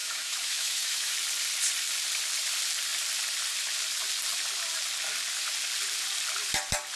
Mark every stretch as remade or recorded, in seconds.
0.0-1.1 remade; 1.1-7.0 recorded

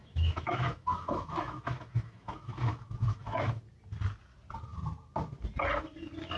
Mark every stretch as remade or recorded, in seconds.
0.0-3.6 remade; 3.6-6.4 recorded

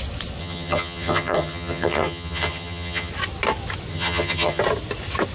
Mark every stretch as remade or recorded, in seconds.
0.0-0.4 recorded; 0.4-3.1 remade; 3.1-3.9 recorded; 3.9-4.6 remade; 4.6-5.3 recorded

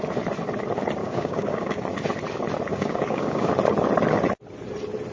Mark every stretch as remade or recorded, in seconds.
0.0-1.0 recorded; 1.0-1.8 remade; 1.8-2.7 recorded; 2.7-3.5 remade; 3.5-5.1 recorded

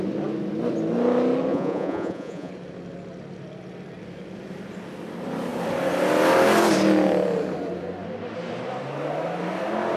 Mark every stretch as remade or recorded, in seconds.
0.0-1.5 recorded; 1.5-2.5 remade; 2.5-10.0 recorded

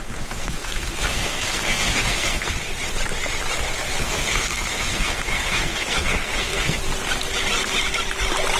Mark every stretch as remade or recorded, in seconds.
0.0-2.7 remade; 2.7-4.0 recorded; 4.0-6.8 remade; 6.8-8.6 recorded

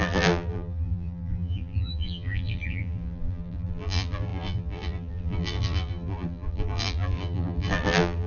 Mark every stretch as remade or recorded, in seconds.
0.0-8.3 remade

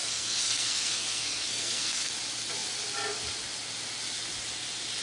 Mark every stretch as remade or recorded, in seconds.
0.0-2.1 remade; 2.1-5.0 recorded